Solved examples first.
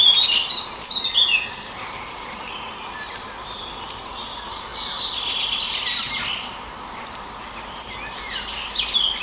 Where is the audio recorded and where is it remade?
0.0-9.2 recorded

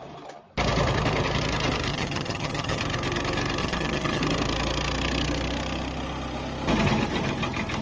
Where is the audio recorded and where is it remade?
0.0-1.9 recorded; 1.9-2.8 remade; 2.8-3.6 recorded; 3.6-4.2 remade; 4.2-7.8 recorded

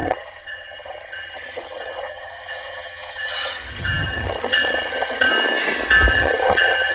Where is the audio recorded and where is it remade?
0.0-5.3 remade; 5.3-6.1 recorded; 6.1-6.9 remade

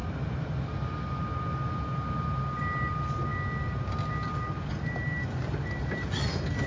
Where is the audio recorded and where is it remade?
0.0-6.7 recorded

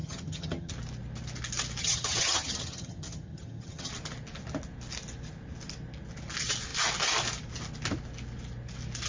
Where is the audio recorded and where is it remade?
0.0-0.7 remade; 0.7-1.8 recorded; 1.8-3.9 remade; 3.9-9.1 recorded

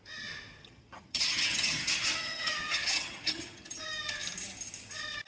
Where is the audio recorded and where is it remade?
0.0-0.6 recorded; 0.6-3.8 remade; 3.8-5.3 recorded

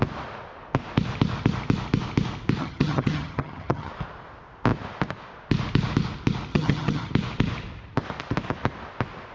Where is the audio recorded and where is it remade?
0.0-2.6 recorded; 2.6-3.9 remade; 3.9-6.5 recorded; 6.5-7.1 remade; 7.1-9.3 recorded